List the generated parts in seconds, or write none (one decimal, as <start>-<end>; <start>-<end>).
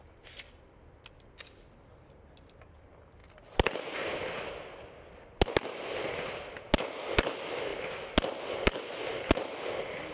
none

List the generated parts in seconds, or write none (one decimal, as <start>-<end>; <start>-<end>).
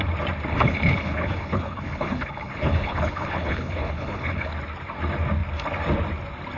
0.5-4.5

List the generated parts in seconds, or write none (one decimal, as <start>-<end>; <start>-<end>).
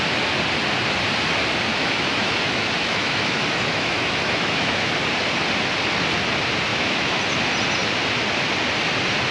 1.7-4.9; 6.7-7.2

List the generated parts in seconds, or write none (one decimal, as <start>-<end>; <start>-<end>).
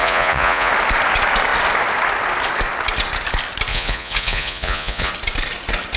0.0-0.7; 3.7-5.1